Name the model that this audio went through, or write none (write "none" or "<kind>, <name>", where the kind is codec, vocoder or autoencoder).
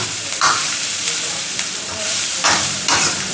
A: vocoder, BigVGAN v2